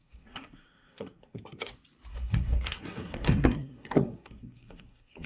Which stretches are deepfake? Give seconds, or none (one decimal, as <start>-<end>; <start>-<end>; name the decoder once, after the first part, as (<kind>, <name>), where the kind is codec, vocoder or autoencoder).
0.0-1.7 (codec, SNAC); 2.1-5.3